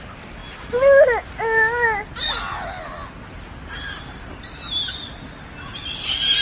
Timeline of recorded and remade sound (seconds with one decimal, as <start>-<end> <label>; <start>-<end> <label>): 0.0-6.4 recorded